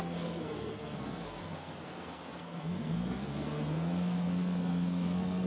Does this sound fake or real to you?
fake